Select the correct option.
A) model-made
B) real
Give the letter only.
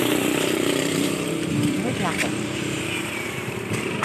A